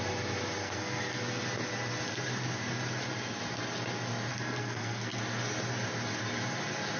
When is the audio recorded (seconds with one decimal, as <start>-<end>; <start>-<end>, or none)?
0.0-0.6; 1.2-4.3; 5.2-7.0